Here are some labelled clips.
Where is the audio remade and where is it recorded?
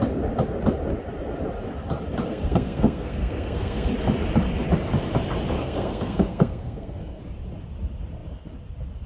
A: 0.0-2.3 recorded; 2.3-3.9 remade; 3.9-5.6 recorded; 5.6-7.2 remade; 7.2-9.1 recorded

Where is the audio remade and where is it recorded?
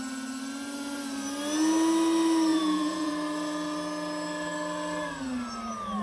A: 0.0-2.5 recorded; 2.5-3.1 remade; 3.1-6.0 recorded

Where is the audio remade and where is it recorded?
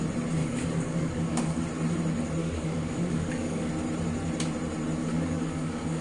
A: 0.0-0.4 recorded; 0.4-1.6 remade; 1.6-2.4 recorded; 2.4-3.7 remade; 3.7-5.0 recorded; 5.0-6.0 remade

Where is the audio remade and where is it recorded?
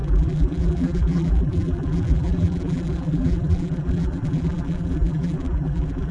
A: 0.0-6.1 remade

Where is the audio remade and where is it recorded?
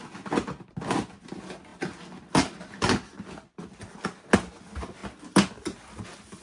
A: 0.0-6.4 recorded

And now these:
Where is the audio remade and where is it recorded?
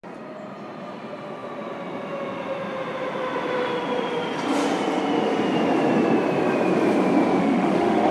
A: 0.0-7.4 recorded; 7.4-8.1 remade